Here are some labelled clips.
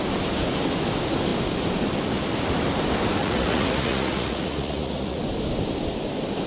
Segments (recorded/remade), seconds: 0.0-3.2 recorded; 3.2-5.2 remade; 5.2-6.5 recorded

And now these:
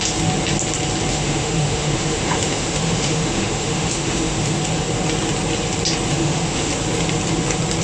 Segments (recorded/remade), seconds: 0.0-1.1 recorded; 1.1-4.6 remade; 4.6-6.1 recorded; 6.1-6.7 remade; 6.7-7.8 recorded

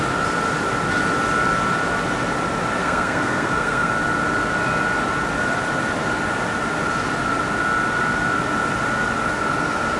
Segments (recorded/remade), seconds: 0.0-2.8 recorded; 2.8-3.9 remade; 3.9-10.0 recorded

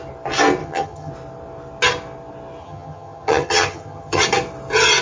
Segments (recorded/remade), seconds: 0.0-0.6 recorded; 0.6-1.1 remade; 1.1-2.6 recorded; 2.6-4.2 remade; 4.2-5.0 recorded

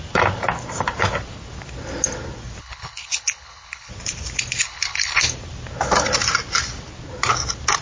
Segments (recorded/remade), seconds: 0.0-2.6 recorded; 2.6-3.9 remade; 3.9-4.6 recorded; 4.6-5.2 remade; 5.2-7.8 recorded

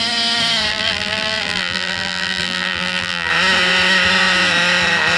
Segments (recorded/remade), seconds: 0.0-0.7 recorded; 0.7-3.3 remade; 3.3-5.2 recorded